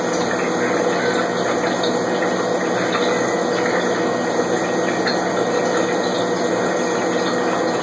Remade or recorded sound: recorded